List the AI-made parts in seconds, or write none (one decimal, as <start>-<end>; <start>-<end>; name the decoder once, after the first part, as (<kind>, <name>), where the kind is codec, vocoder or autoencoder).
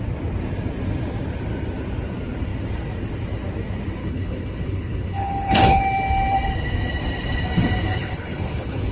4.0-5.8 (codec, HILCodec); 7.8-8.9